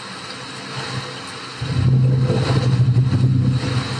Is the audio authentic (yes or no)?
yes